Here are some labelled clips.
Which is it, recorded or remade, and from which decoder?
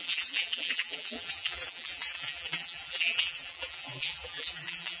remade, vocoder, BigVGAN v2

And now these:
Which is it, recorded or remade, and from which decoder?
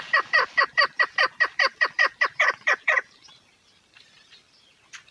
remade, vocoder, BigVGAN v2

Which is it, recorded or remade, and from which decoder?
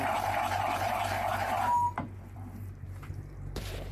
remade, vocoder, BigVGAN v2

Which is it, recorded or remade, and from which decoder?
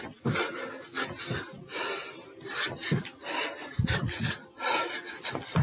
recorded